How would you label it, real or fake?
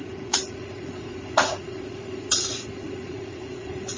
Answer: fake